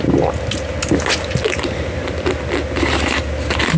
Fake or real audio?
real